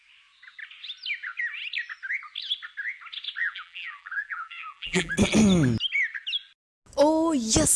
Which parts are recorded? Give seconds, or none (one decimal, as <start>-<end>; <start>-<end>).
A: 0.0-3.4; 5.1-7.8